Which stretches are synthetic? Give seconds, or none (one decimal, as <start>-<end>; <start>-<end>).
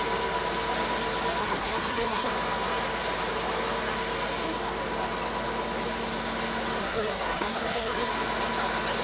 1.4-2.3; 6.8-8.1